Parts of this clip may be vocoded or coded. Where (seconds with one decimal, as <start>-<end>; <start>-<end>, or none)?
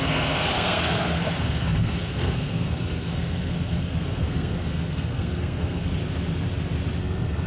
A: 0.0-6.0; 7.0-7.5